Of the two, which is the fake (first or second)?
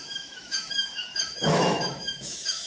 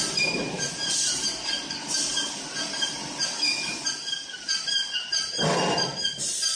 first